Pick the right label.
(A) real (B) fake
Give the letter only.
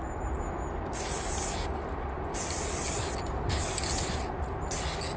A